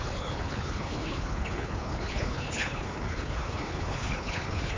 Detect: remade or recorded remade